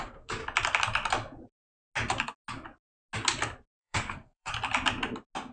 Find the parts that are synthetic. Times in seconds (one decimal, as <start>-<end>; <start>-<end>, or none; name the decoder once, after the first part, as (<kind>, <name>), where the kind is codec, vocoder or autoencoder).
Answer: 0.0-0.4 (codec, SNAC); 3.7-4.5